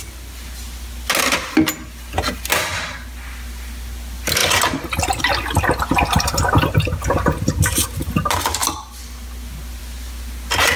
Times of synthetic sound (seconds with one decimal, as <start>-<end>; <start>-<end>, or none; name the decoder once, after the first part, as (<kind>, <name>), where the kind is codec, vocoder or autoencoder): none